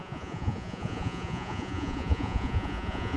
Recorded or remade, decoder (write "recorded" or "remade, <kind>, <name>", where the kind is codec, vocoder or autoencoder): remade, vocoder, Vocos